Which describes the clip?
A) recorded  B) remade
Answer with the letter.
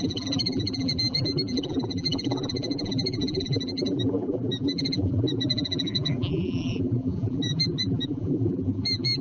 B